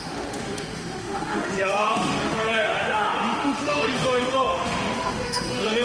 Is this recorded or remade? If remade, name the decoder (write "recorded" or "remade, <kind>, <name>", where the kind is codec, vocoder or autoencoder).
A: remade, autoencoder, DAC-VAE